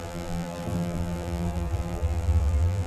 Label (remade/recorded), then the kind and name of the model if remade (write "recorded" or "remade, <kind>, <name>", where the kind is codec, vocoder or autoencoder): remade, vocoder, BigVGAN v2